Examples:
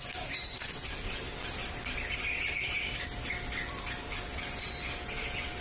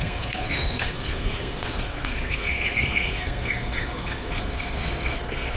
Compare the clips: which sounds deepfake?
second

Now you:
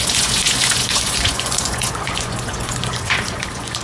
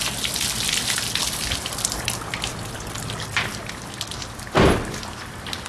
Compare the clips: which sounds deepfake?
first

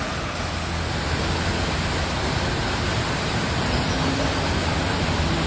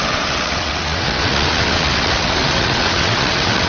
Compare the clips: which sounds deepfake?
second